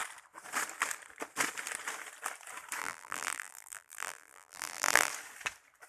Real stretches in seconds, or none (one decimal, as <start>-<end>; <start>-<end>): 0.0-2.8; 5.1-5.9